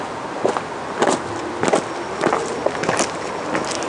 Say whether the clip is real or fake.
real